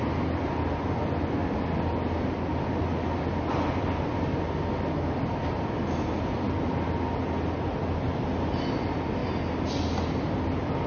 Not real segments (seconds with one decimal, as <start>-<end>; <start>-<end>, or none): none